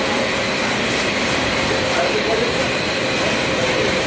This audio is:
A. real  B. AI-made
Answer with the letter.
B